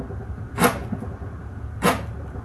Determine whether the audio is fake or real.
real